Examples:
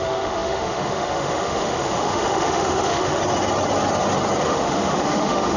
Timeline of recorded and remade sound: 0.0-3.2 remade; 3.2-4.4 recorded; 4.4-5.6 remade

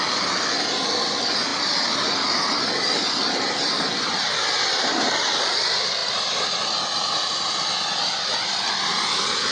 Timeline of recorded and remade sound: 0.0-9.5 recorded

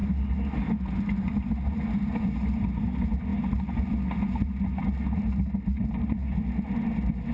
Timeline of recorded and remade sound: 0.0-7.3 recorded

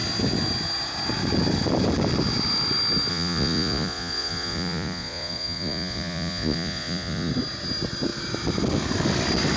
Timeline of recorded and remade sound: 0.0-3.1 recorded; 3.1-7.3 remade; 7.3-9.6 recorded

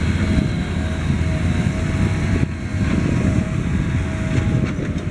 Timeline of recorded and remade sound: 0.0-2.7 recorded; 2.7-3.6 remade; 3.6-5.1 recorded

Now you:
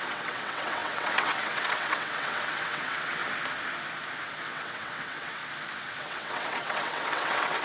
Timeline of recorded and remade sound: 0.0-3.2 remade; 3.2-4.5 recorded; 4.5-5.4 remade; 5.4-6.0 recorded; 6.0-7.6 remade

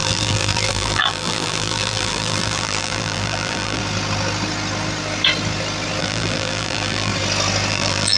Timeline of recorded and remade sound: 0.0-3.8 remade; 3.8-6.0 recorded; 6.0-7.1 remade; 7.1-7.7 recorded; 7.7-8.2 remade